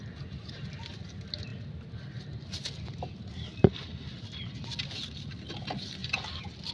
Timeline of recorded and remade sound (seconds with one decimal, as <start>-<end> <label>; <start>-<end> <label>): 0.0-6.7 recorded